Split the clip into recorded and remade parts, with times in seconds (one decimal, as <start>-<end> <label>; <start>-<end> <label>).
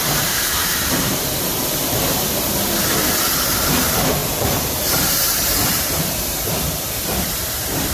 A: 0.0-1.8 remade; 1.8-3.1 recorded; 3.1-7.9 remade